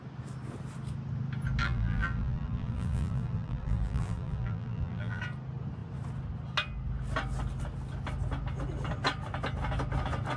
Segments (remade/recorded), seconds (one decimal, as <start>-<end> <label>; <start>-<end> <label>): 0.0-1.6 recorded; 1.6-5.2 remade; 5.2-10.4 recorded